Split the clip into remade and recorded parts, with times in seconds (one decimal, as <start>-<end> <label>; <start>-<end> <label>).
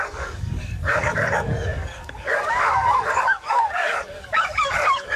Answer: 0.0-5.2 remade